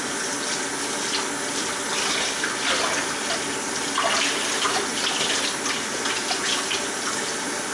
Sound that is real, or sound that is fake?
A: real